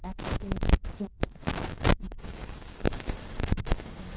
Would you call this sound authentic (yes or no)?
no